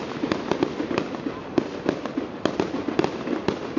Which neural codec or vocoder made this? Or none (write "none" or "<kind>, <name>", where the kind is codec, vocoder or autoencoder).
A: none